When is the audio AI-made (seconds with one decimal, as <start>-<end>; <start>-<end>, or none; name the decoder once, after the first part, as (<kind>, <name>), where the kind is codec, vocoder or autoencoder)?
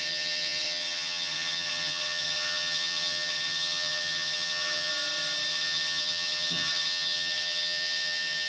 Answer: 0.0-4.9 (vocoder, HiFi-GAN); 5.5-8.5